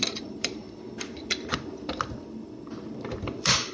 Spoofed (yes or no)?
yes